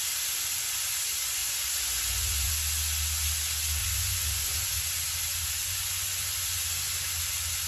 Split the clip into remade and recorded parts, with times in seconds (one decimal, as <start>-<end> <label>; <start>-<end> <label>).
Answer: 0.0-1.4 recorded; 1.4-2.5 remade; 2.5-3.8 recorded; 3.8-4.8 remade; 4.8-5.6 recorded; 5.6-6.6 remade; 6.6-7.7 recorded